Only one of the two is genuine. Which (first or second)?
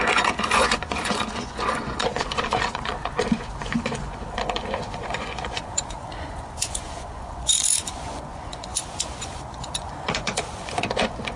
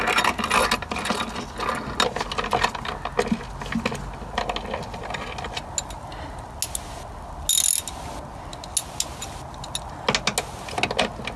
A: second